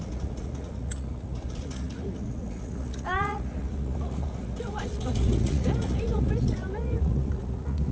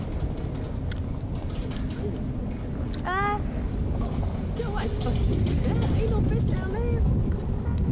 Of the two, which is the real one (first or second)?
second